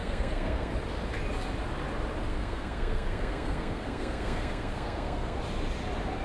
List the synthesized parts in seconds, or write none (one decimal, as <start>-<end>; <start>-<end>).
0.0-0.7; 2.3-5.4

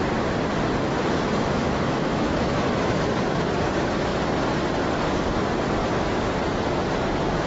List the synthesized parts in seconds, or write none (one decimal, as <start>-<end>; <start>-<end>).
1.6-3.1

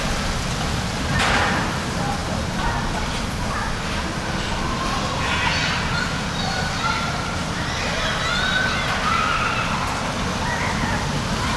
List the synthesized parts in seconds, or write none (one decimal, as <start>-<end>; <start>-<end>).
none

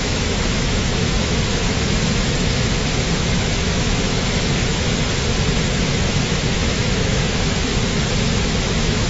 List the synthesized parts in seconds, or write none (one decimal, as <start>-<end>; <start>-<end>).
0.0-4.9; 5.9-7.7; 8.6-9.1

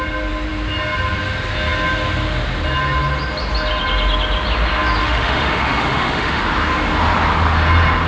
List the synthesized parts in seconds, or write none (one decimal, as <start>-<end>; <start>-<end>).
5.0-6.4

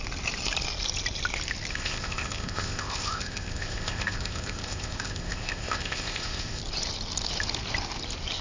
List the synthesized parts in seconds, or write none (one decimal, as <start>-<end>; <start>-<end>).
1.7-6.6